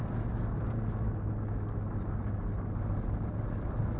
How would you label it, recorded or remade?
recorded